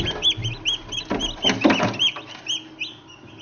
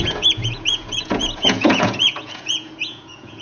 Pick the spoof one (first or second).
second